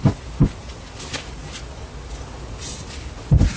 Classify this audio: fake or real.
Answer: real